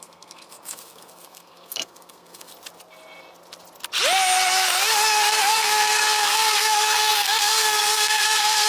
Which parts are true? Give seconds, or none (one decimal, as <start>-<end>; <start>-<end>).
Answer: 2.5-5.4